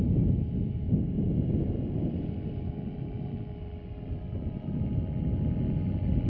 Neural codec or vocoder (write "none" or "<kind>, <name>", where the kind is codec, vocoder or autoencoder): none